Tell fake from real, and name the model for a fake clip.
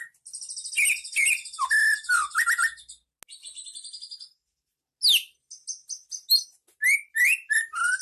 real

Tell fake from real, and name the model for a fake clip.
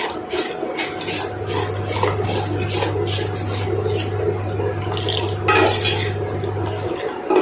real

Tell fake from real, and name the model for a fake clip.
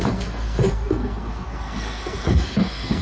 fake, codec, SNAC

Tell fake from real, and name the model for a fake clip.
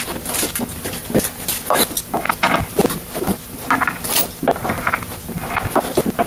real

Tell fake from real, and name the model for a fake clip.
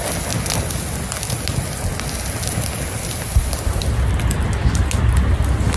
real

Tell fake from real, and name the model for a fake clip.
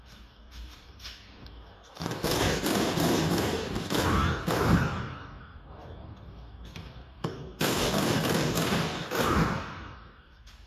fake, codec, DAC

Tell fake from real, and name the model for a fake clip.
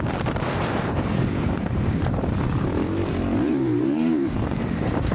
fake, vocoder, BigVGAN v2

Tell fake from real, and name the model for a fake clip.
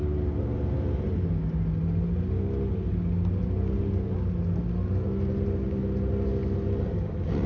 real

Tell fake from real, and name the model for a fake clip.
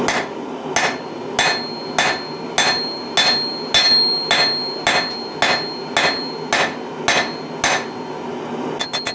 real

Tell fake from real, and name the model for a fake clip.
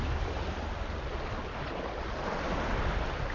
real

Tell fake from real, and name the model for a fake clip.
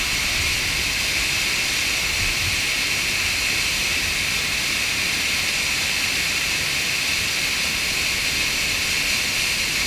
real